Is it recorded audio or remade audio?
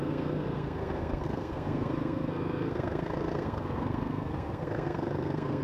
remade